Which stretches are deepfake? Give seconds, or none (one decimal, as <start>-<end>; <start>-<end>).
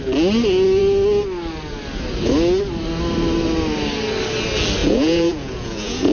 4.8-6.1